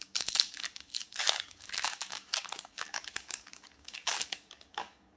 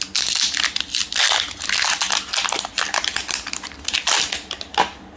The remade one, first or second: first